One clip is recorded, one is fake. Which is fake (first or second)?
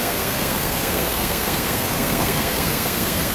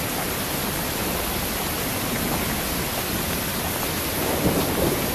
first